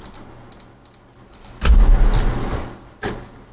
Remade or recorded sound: recorded